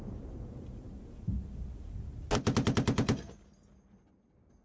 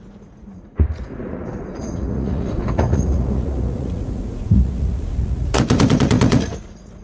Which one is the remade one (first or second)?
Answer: second